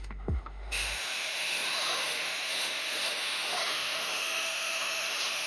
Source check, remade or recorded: remade